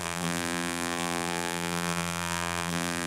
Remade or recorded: remade